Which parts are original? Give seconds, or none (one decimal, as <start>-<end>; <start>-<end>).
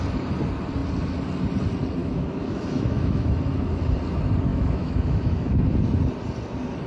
0.0-2.0; 3.4-4.5; 5.6-6.9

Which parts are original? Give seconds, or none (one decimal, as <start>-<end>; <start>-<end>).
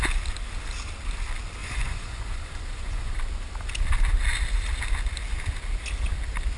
0.0-1.6; 3.1-6.6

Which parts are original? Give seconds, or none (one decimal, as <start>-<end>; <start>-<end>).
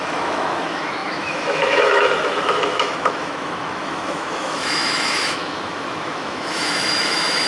none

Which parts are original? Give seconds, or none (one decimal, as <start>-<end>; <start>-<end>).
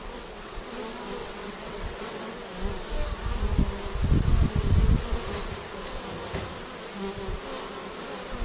0.7-1.2; 2.3-8.4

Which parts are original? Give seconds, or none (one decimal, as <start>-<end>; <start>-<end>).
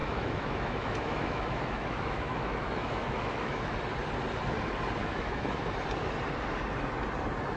3.7-5.0; 5.6-7.6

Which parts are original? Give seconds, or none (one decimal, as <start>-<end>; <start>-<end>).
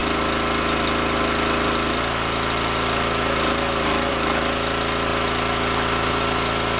0.0-6.8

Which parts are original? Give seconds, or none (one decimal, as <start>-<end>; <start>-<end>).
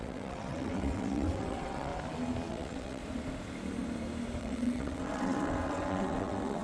1.9-2.5; 3.0-4.4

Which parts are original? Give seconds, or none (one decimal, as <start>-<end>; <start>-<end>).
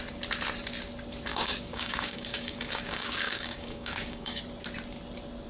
0.0-1.3; 4.4-5.5